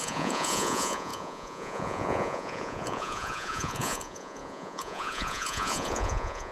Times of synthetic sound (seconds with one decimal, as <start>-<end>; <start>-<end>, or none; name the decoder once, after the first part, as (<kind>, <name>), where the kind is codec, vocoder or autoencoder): 0.0-6.5 (vocoder, Vocos)